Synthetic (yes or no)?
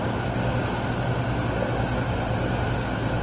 no